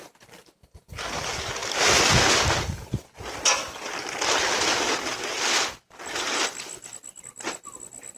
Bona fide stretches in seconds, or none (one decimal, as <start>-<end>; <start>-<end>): 0.0-8.2